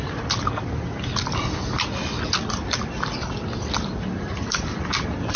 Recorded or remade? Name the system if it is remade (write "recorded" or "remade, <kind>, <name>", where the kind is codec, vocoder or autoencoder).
recorded